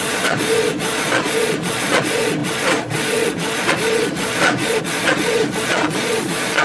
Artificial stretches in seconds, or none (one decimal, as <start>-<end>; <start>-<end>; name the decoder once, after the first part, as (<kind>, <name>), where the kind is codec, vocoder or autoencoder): 0.0-6.6 (vocoder, Vocos)